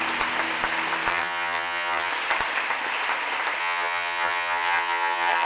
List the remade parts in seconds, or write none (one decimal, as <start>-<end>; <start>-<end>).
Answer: 1.1-2.1; 3.6-5.5